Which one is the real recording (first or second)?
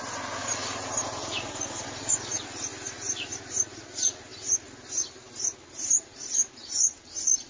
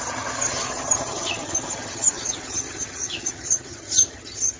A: first